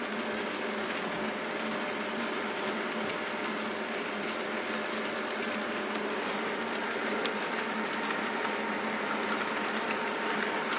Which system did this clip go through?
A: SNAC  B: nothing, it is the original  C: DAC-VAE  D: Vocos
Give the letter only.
B